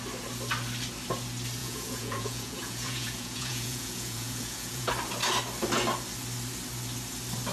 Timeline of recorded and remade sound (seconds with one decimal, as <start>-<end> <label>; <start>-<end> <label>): 0.0-1.6 recorded; 1.6-4.9 remade; 4.9-7.5 recorded